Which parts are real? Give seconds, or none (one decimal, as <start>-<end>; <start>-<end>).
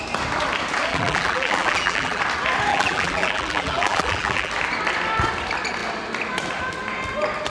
0.0-0.9; 2.2-2.7; 4.5-7.5